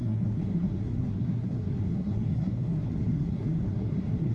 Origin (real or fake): fake